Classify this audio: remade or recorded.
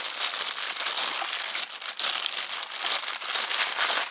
recorded